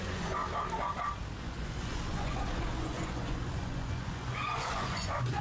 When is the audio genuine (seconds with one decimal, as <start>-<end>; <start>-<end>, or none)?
0.4-1.4